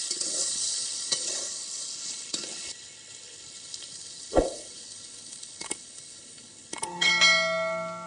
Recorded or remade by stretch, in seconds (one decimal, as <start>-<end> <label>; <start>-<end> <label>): 0.0-7.1 remade; 7.1-8.1 recorded